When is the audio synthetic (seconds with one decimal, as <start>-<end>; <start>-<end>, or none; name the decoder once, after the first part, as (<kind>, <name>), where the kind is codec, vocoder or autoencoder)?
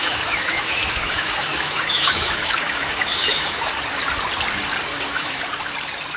0.0-3.7 (autoencoder, DAC-VAE); 4.9-5.4